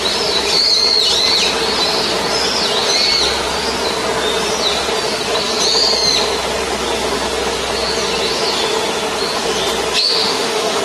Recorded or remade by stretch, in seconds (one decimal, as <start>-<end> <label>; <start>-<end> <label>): 0.0-10.0 recorded; 10.0-10.8 remade